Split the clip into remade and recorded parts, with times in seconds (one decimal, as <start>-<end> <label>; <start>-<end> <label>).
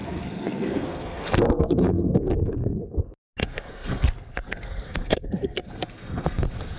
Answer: 0.0-3.0 remade; 3.0-3.4 recorded; 3.4-6.8 remade